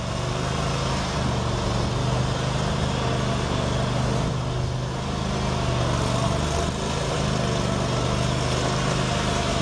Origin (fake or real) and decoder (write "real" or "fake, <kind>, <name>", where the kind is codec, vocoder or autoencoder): real